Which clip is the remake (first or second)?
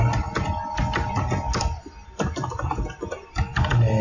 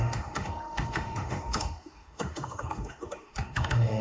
second